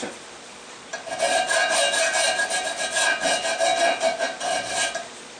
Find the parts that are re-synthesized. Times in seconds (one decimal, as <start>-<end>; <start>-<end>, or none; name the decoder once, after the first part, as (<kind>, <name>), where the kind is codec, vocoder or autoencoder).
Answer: none

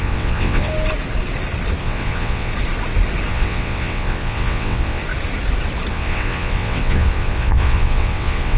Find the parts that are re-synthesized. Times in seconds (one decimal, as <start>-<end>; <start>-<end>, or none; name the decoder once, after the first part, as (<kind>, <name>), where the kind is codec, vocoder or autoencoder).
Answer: 0.0-0.7 (vocoder, WaveNeXt); 1.8-2.5; 3.3-5.0; 5.9-8.6

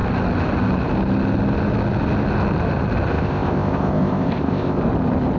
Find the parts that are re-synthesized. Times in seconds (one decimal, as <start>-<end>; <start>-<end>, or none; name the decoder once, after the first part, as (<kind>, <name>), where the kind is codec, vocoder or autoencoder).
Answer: 3.1-4.8 (codec, ZipCodec)

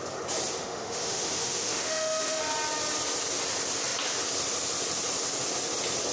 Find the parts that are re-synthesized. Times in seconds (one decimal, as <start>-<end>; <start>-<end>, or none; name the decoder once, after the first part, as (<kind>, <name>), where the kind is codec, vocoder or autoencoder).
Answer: 0.6-2.4 (autoencoder, DAC-VAE)

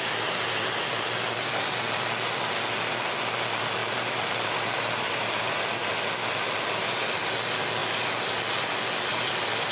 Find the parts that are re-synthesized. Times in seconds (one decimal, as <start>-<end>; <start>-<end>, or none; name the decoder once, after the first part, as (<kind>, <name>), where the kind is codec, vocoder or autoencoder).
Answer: none